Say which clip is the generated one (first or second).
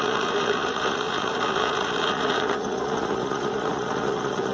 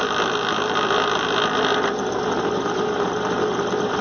first